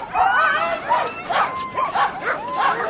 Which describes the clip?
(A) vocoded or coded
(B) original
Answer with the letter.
B